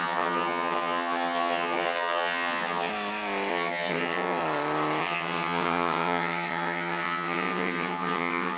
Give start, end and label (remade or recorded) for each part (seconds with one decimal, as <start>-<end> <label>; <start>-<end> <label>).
0.0-2.9 remade; 2.9-3.5 recorded; 3.5-4.4 remade; 4.4-5.0 recorded; 5.0-8.6 remade